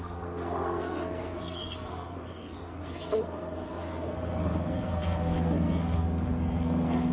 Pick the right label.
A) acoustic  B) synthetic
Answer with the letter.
B